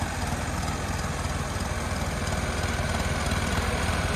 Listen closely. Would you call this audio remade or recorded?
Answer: recorded